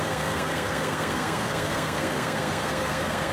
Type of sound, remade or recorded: remade